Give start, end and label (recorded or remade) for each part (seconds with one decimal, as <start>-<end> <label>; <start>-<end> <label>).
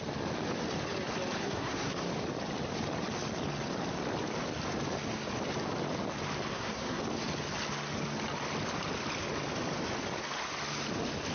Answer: 0.0-1.4 recorded; 1.4-2.1 remade; 2.1-6.5 recorded; 6.5-7.0 remade; 7.0-11.3 recorded